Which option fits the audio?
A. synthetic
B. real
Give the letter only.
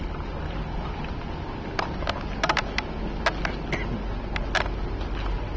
B